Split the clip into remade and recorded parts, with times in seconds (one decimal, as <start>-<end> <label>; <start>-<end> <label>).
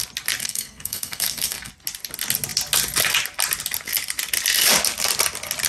0.0-0.4 recorded; 0.4-1.7 remade; 1.7-5.7 recorded